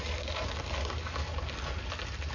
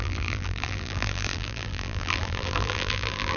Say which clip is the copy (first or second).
second